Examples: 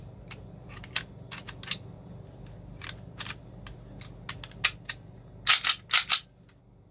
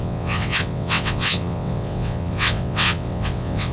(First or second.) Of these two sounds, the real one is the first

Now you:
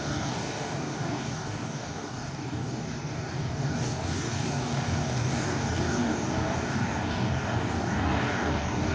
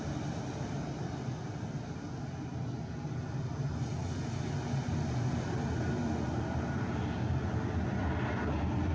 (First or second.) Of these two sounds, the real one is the second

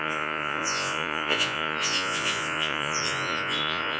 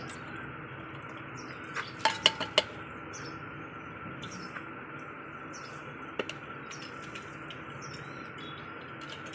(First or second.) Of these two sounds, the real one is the second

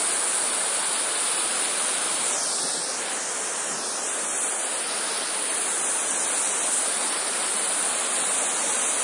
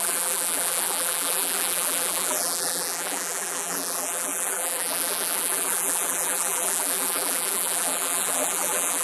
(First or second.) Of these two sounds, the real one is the first